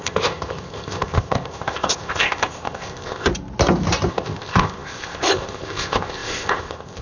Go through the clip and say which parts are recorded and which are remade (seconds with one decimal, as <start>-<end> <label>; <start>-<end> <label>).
0.0-3.3 remade; 3.3-4.1 recorded; 4.1-7.0 remade

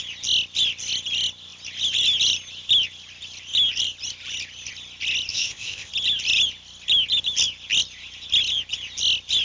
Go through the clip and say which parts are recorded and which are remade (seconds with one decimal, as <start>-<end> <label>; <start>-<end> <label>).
0.0-5.3 recorded; 5.3-5.9 remade; 5.9-9.4 recorded

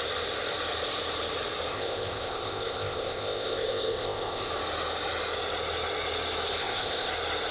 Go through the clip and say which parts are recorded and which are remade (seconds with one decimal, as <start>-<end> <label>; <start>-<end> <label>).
0.0-1.7 recorded; 1.7-4.5 remade; 4.5-6.6 recorded; 6.6-7.1 remade; 7.1-7.5 recorded

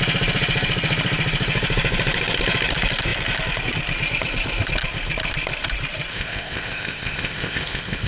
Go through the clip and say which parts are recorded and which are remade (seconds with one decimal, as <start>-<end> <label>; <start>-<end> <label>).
0.0-6.1 recorded; 6.1-8.1 remade

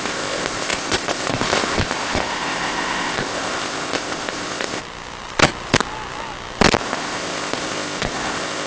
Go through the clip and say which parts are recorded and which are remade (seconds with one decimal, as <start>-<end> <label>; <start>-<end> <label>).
0.0-4.8 remade; 4.8-6.8 recorded; 6.8-8.7 remade

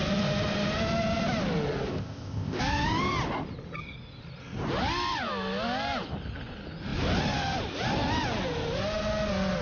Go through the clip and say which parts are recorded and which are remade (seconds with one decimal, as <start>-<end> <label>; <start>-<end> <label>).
0.0-1.9 recorded; 1.9-2.6 remade; 2.6-9.6 recorded